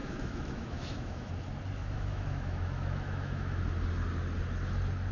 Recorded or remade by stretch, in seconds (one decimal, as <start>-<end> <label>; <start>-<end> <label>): 0.0-1.3 remade; 1.3-1.8 recorded; 1.8-3.6 remade; 3.6-5.1 recorded